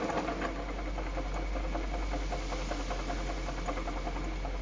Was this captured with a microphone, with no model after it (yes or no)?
yes